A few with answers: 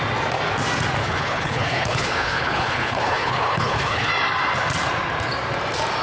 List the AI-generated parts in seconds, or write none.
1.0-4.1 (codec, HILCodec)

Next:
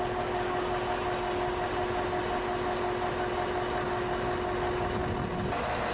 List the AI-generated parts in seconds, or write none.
none